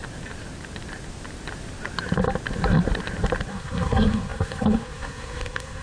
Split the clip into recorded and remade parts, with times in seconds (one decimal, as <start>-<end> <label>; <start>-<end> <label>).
0.0-3.5 recorded; 3.5-5.8 remade